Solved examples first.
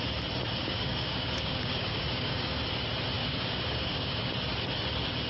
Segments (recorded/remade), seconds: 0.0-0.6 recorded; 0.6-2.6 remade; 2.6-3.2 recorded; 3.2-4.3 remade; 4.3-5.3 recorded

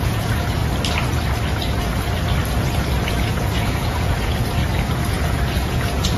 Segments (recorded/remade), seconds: 0.0-0.6 remade; 0.6-3.1 recorded; 3.1-4.6 remade; 4.6-5.1 recorded; 5.1-6.2 remade